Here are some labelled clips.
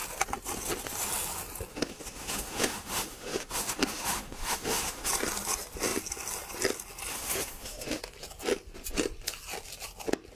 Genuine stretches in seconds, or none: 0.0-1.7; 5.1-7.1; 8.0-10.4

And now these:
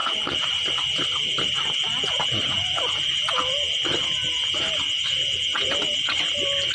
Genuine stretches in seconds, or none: 0.0-6.7

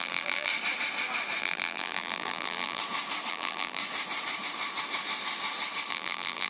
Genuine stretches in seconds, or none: 0.5-1.4; 2.8-3.3; 3.8-5.9